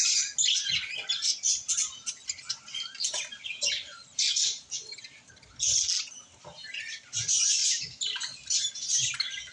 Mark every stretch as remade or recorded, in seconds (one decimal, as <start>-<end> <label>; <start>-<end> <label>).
0.0-7.6 recorded; 7.6-8.7 remade; 8.7-9.5 recorded